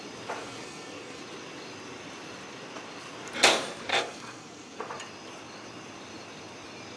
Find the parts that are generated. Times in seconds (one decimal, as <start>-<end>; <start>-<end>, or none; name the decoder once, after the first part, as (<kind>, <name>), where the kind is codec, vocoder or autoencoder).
0.4-1.2 (codec, SNAC); 3.9-4.9